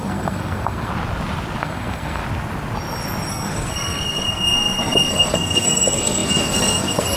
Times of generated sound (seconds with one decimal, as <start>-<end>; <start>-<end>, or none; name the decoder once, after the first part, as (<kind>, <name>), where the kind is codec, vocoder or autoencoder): 0.0-0.9 (codec, SNAC); 1.6-2.2; 3.3-7.2